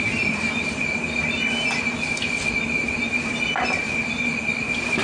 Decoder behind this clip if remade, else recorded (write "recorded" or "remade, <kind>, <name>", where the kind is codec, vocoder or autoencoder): recorded